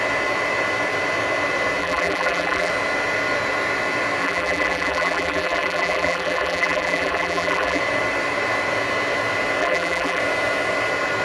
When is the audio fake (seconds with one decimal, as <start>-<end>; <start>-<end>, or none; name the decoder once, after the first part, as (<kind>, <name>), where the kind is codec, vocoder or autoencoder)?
1.8-2.7 (vocoder, BigVGAN v2); 4.2-7.8; 9.6-10.2